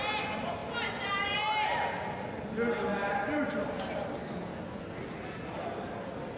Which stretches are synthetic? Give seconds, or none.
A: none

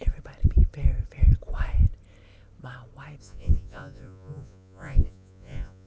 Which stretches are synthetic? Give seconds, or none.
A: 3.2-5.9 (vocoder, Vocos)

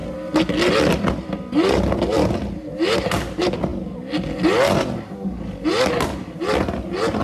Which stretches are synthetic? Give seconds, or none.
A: none

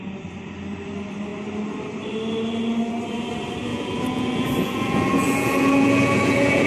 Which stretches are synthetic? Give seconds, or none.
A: 3.7-6.7 (vocoder, Vocos)

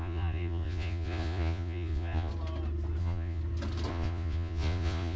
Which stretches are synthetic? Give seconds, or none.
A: 0.0-2.3 (vocoder, Vocos); 3.0-3.4; 3.9-5.2

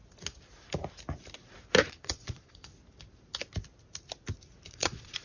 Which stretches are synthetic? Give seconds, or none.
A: 1.9-2.7 (vocoder, Vocos); 4.7-5.2